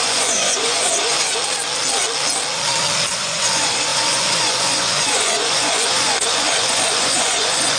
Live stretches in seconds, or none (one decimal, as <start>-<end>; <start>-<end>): 1.3-3.1